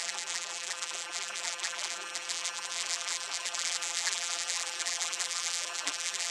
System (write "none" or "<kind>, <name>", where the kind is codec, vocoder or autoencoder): vocoder, BigVGAN v2